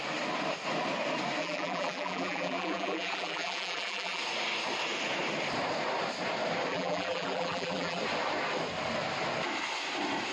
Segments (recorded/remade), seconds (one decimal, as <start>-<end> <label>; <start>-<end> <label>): 0.0-1.4 recorded; 1.4-4.2 remade; 4.2-6.7 recorded; 6.7-8.0 remade; 8.0-10.3 recorded